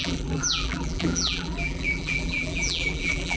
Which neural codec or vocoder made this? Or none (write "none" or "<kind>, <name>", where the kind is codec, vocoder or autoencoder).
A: vocoder, BigVGAN v2